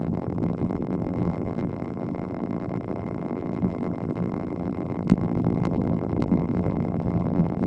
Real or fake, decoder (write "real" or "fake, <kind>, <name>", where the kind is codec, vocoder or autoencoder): fake, vocoder, BigVGAN v2